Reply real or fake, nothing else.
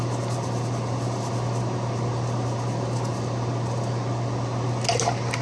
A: real